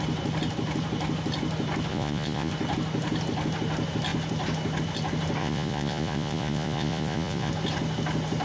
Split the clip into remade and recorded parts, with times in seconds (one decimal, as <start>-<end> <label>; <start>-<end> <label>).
0.0-1.9 recorded; 1.9-2.5 remade; 2.5-5.4 recorded; 5.4-7.5 remade; 7.5-8.4 recorded